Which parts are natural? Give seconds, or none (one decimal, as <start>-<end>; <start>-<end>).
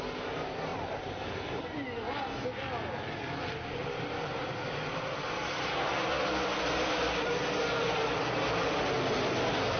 0.0-0.7; 1.6-3.8; 6.0-9.8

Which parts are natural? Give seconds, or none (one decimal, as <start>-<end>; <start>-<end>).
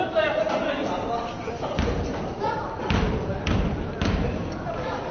none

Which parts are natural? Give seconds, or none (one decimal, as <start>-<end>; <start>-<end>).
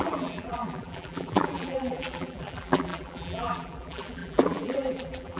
none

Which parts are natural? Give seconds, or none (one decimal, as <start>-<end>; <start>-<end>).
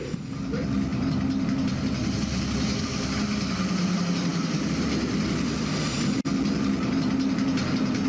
0.0-8.1